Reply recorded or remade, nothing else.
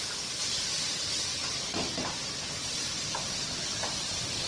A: recorded